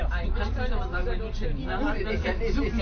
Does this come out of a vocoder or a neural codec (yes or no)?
no